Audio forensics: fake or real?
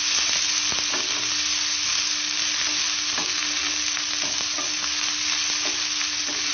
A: real